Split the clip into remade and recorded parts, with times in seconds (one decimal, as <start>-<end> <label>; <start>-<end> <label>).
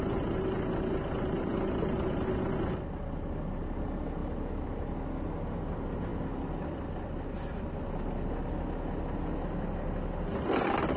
0.0-11.0 recorded